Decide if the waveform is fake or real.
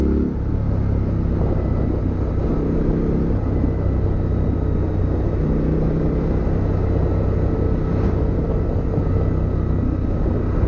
real